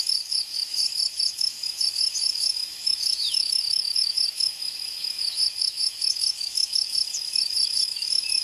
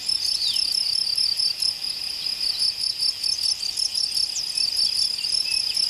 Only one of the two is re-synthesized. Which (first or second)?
first